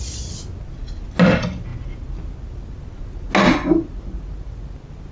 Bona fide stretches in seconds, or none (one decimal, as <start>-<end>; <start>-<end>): 0.0-5.1